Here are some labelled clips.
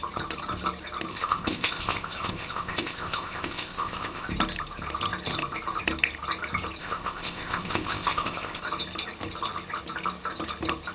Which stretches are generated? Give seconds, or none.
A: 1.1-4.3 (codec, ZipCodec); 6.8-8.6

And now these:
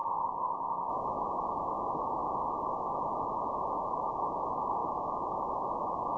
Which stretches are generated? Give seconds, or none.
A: 0.0-0.9 (codec, ZipCodec)

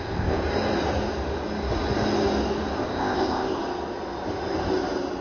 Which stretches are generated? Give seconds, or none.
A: 0.0-0.4 (codec, ZipCodec); 2.8-3.6